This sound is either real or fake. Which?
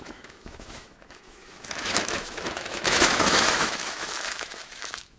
fake